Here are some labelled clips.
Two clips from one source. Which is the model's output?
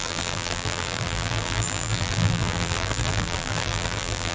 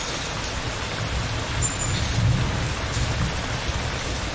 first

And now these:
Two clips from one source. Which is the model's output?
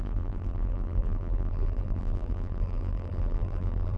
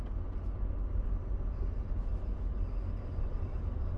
first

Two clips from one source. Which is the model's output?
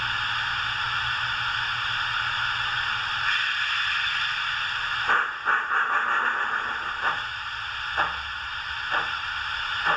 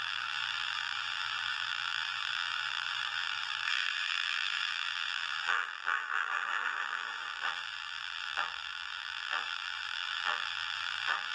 second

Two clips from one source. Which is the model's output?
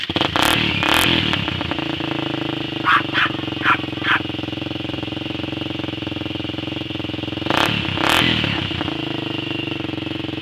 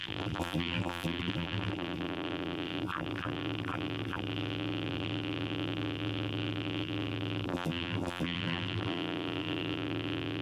second